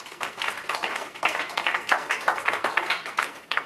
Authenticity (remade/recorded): remade